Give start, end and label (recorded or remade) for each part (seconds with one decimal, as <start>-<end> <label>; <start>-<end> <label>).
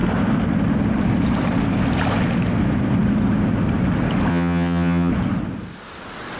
0.0-4.3 recorded; 4.3-5.1 remade; 5.1-6.4 recorded